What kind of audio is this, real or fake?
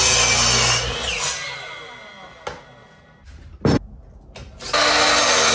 real